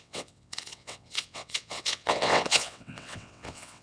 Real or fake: fake